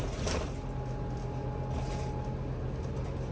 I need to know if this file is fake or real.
real